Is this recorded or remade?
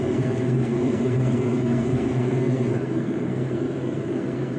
remade